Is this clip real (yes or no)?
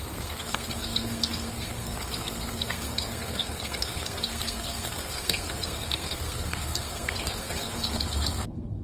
no